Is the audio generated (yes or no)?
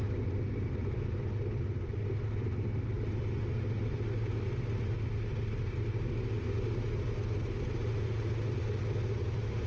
no